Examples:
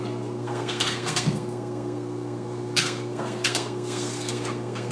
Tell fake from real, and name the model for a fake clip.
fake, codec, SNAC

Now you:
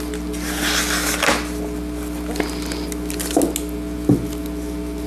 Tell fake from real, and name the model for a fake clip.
real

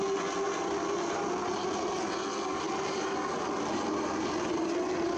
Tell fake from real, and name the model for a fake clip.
real